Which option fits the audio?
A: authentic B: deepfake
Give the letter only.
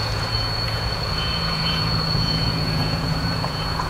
B